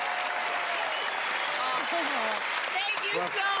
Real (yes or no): yes